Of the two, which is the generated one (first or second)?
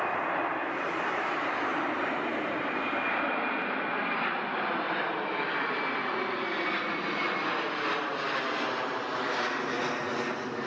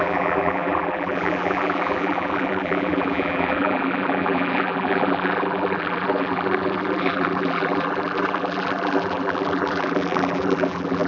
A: second